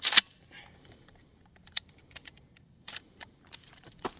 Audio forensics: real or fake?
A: fake